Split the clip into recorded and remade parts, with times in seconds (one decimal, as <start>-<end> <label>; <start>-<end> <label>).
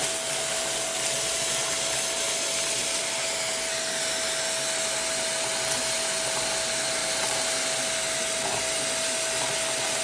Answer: 0.0-10.0 recorded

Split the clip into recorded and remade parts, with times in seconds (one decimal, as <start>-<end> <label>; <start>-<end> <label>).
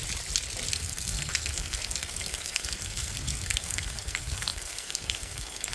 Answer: 0.0-0.7 recorded; 0.7-5.7 remade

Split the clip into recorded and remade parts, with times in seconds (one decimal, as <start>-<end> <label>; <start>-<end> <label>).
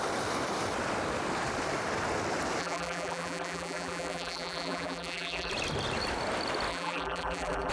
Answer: 0.0-2.6 recorded; 2.6-5.5 remade; 5.5-6.7 recorded; 6.7-7.7 remade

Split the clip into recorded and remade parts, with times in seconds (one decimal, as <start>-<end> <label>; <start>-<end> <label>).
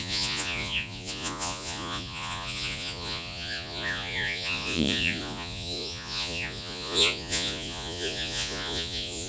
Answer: 0.0-9.3 remade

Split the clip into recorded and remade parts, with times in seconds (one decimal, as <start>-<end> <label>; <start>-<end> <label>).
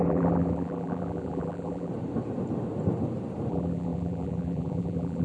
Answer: 0.0-1.9 remade; 1.9-3.5 recorded; 3.5-5.2 remade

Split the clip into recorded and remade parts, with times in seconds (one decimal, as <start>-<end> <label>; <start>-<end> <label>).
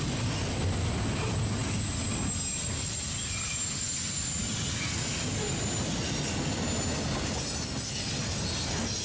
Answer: 0.0-9.0 recorded